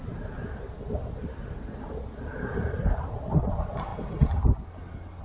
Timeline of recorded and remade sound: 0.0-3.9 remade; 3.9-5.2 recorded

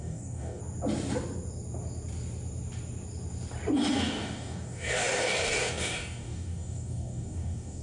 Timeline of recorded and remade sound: 0.0-0.6 remade; 0.6-3.9 recorded; 3.9-7.8 remade

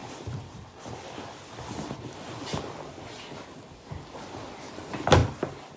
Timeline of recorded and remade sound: 0.0-3.0 remade; 3.0-5.8 recorded

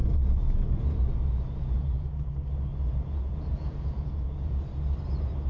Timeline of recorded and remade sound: 0.0-2.3 remade; 2.3-2.7 recorded; 2.7-4.6 remade; 4.6-5.5 recorded

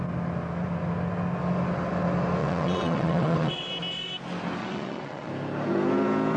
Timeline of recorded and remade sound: 0.0-2.4 recorded; 2.4-3.7 remade; 3.7-4.6 recorded; 4.6-5.3 remade; 5.3-6.4 recorded